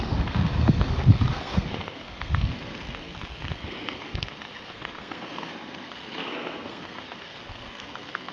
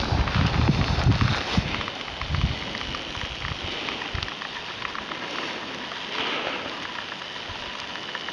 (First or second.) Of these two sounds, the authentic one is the second